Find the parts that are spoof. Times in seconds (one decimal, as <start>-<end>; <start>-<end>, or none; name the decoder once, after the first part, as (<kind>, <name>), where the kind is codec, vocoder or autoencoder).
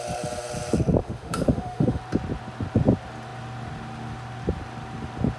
1.0-2.0 (autoencoder, DAC-VAE)